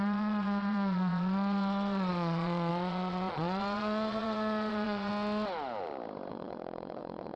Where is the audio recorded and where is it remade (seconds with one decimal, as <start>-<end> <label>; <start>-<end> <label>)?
0.0-5.1 remade; 5.1-6.3 recorded; 6.3-7.4 remade